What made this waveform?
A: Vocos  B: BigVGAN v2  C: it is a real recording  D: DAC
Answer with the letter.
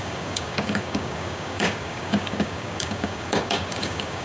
D